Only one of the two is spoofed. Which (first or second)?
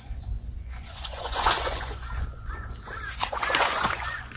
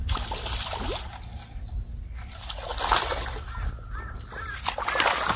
first